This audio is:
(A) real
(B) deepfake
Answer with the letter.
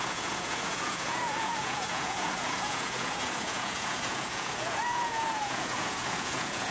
B